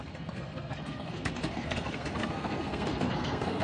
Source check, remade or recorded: remade